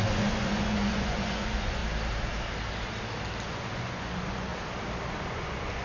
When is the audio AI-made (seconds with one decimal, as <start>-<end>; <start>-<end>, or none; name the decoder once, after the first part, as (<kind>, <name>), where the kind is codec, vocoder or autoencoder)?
0.0-1.8 (vocoder, Vocos); 3.5-4.5; 5.3-5.8